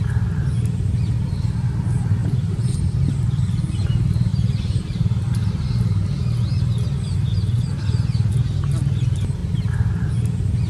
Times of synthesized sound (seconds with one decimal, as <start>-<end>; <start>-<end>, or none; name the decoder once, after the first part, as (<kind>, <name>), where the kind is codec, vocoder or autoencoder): 2.2-3.0 (vocoder, BigVGAN v2); 4.3-5.5; 9.4-10.1

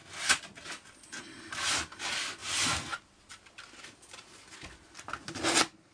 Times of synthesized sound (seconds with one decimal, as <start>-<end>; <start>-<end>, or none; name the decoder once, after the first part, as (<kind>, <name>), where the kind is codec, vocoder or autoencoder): none

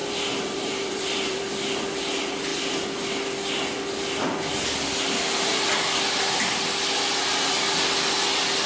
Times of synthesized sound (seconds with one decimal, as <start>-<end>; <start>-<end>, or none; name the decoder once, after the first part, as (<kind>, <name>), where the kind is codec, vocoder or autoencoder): 0.0-1.7 (vocoder, BigVGAN v2)

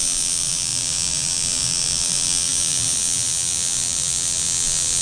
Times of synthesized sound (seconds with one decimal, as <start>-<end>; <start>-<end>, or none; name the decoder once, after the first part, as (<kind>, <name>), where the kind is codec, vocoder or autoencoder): 0.0-5.0 (vocoder, BigVGAN v2)

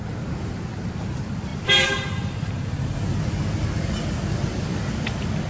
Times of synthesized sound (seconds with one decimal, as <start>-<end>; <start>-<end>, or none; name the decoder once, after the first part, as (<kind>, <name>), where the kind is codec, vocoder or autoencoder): none

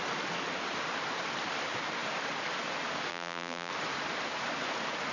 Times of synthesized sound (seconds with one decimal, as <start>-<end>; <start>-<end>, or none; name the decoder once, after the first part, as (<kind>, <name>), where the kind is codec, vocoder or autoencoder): 3.1-3.7 (vocoder, BigVGAN v2)

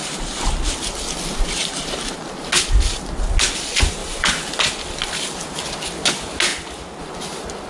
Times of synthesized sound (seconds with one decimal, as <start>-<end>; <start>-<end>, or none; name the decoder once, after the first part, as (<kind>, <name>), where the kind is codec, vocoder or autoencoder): 0.0-0.5 (vocoder, BigVGAN v2); 1.6-2.2; 4.0-4.6; 6.5-7.0